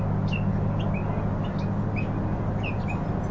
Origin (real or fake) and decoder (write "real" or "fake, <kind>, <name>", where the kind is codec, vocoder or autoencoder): real